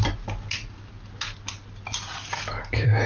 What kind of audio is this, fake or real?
real